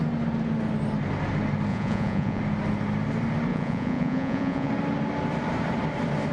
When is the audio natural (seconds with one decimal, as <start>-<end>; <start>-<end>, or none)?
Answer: 0.0-1.7; 2.4-3.5; 4.7-6.3